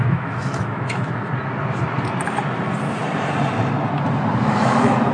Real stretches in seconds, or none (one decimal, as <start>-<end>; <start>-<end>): 1.3-4.4